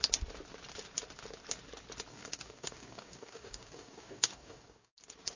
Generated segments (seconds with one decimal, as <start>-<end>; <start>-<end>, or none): 2.1-4.9